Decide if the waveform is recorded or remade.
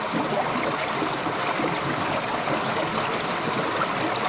recorded